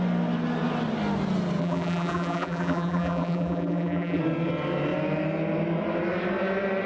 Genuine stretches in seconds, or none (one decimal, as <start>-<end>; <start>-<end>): 0.0-1.6; 4.2-6.9